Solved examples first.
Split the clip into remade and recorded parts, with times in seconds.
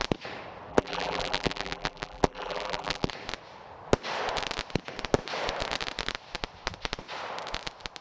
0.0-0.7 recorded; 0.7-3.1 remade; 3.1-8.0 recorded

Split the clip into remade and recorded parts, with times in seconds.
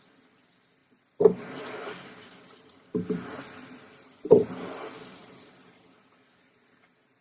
0.0-7.2 remade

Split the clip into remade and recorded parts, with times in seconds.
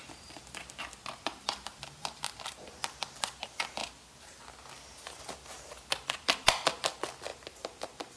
0.0-1.0 recorded; 1.0-2.8 remade; 2.8-7.3 recorded; 7.3-8.2 remade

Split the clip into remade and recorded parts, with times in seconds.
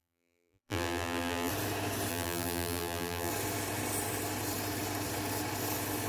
0.0-1.5 remade; 1.5-2.1 recorded; 2.1-3.3 remade; 3.3-6.1 recorded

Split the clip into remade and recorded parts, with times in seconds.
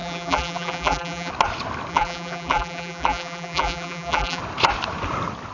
0.0-1.3 remade; 1.3-1.9 recorded; 1.9-4.4 remade; 4.4-5.5 recorded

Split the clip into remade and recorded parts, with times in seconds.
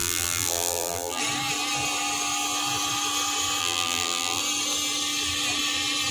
0.0-1.2 remade; 1.2-3.6 recorded; 3.6-4.4 remade; 4.4-6.1 recorded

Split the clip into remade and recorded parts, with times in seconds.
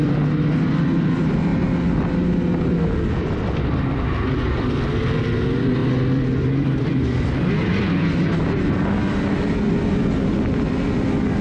0.0-11.4 recorded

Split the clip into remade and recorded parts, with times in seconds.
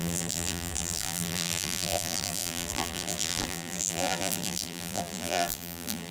0.0-6.1 remade